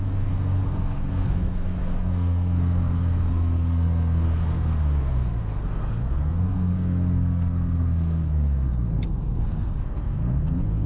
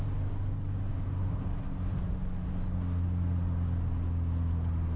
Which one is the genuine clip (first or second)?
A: second